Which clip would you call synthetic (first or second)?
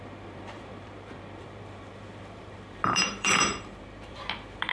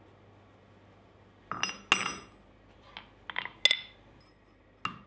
first